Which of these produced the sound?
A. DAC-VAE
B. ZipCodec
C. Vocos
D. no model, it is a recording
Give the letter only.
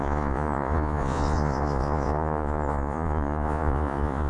C